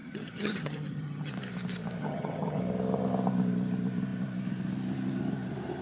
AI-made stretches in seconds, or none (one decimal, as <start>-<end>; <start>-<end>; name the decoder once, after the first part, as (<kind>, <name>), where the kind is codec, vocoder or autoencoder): 0.0-1.3 (vocoder, HiFi-GAN); 2.0-2.6